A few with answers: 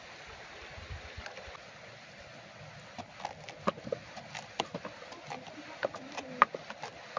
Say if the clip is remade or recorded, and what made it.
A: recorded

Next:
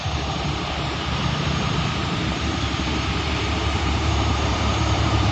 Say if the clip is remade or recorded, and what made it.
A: remade, vocoder, BigVGAN v2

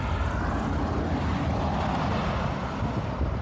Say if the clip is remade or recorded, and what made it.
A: recorded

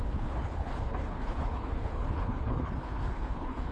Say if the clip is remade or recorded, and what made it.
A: remade, codec, HILCodec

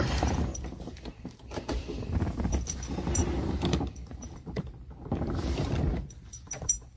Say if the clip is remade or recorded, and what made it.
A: remade, vocoder, BigVGAN v2